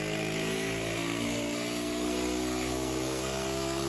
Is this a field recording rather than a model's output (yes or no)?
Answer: no